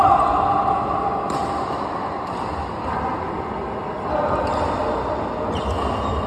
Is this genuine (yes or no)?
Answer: yes